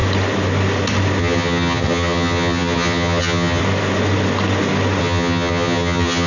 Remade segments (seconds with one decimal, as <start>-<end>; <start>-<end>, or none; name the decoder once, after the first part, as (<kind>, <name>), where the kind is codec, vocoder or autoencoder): 1.2-3.6 (vocoder, HiFi-GAN); 5.0-6.3